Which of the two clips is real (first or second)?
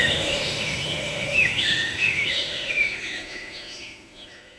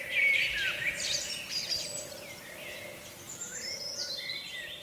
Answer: second